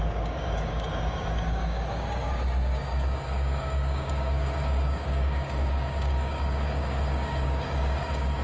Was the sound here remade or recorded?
remade